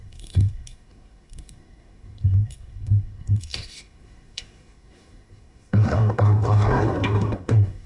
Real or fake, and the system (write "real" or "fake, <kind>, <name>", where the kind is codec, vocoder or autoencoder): fake, codec, SNAC